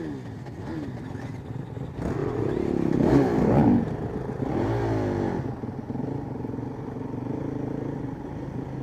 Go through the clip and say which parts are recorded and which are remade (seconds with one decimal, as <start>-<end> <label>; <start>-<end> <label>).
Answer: 0.0-8.8 recorded